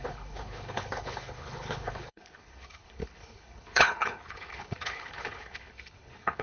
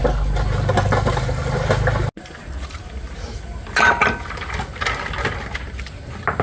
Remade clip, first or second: first